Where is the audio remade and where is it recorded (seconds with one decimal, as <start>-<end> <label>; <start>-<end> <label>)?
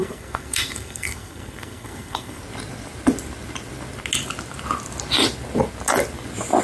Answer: 0.0-2.4 remade; 2.4-6.6 recorded